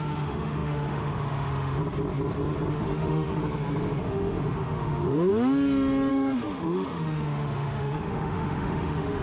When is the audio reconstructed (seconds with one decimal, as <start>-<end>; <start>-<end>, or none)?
0.0-1.8; 2.7-3.4; 4.0-5.3; 6.1-9.2